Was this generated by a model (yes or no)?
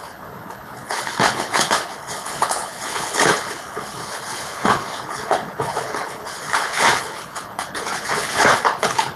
yes